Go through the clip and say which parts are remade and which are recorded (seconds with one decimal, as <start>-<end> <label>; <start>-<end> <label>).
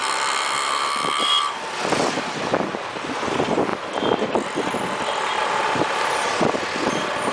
0.0-2.4 remade; 2.4-3.7 recorded; 3.7-4.5 remade; 4.5-5.4 recorded; 5.4-6.0 remade; 6.0-7.3 recorded